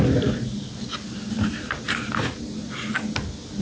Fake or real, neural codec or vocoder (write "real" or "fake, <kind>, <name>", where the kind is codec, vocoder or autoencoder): real